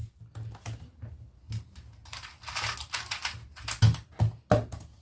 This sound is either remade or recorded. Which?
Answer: recorded